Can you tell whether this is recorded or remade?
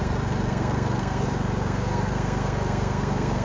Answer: remade